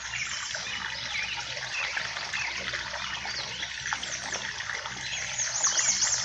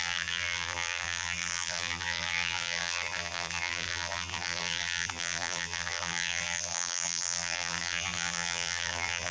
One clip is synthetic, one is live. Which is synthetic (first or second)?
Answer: second